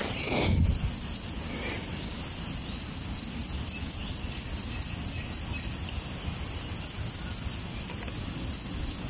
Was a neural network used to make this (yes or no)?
no